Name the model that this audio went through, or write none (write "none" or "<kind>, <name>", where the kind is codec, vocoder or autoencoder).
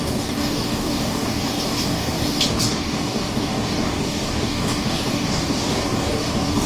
codec, DAC